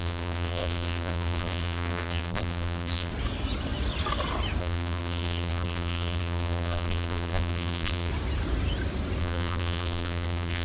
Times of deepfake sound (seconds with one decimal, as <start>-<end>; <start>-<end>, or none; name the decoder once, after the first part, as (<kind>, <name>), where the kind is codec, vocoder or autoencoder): 0.0-3.1 (vocoder, BigVGAN v2); 4.6-8.1; 9.2-10.6